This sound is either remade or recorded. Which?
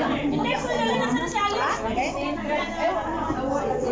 recorded